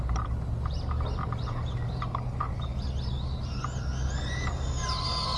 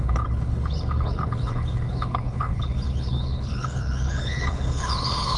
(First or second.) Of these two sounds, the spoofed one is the second